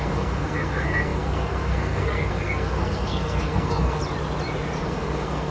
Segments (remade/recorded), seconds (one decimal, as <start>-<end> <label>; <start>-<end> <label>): 0.0-4.0 remade; 4.0-4.8 recorded; 4.8-5.5 remade